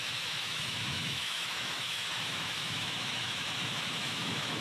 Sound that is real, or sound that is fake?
fake